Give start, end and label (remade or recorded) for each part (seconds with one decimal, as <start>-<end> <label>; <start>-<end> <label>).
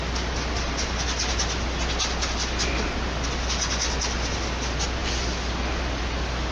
0.0-6.5 recorded